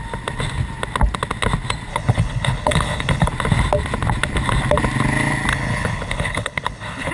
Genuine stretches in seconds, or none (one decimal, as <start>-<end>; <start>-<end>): 0.0-1.9; 3.3-5.5